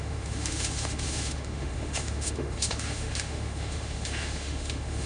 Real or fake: fake